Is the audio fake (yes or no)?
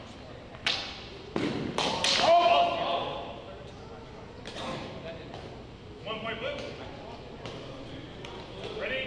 no